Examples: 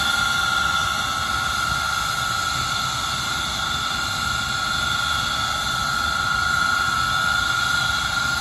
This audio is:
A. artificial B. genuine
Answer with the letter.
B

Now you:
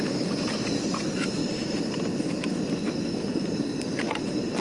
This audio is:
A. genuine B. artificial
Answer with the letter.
A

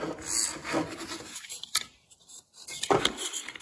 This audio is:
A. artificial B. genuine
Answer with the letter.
B